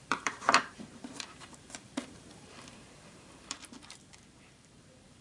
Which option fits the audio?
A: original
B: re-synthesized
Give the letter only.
B